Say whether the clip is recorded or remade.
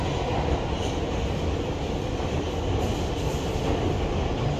recorded